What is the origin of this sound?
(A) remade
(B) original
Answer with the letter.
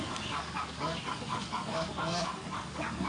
A